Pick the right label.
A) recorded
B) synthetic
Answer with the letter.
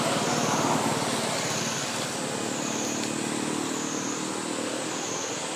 A